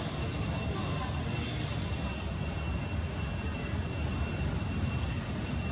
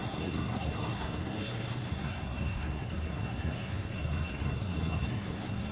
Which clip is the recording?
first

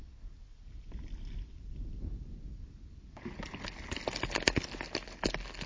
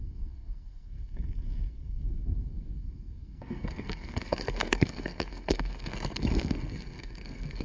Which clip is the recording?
first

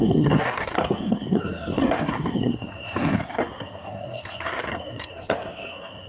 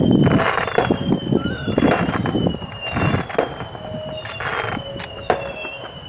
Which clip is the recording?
second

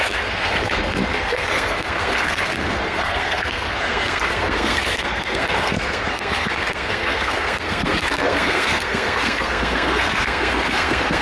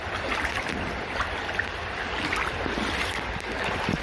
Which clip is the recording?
second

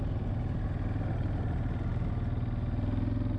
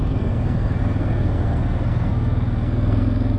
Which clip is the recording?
first